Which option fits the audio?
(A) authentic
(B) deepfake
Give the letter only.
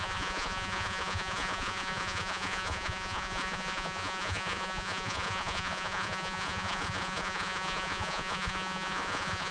B